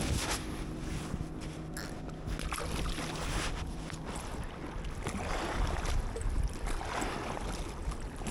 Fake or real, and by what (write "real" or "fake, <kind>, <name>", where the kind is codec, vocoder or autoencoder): real